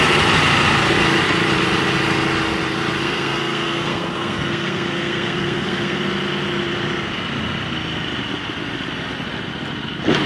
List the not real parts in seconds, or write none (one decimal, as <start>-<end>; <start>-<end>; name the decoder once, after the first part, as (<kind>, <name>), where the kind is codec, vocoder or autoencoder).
3.0-6.0 (codec, SNAC)